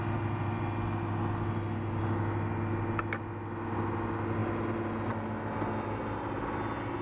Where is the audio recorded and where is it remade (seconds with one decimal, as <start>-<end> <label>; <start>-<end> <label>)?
0.0-7.0 recorded